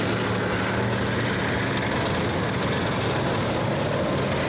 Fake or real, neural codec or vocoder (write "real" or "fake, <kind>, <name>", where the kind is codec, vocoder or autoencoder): real